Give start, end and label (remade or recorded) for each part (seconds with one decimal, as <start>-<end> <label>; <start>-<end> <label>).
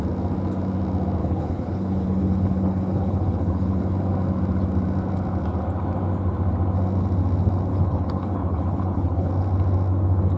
0.0-1.2 recorded; 1.2-3.8 remade; 3.8-7.7 recorded; 7.7-9.3 remade; 9.3-10.4 recorded